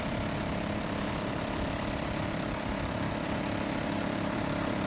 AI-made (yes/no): yes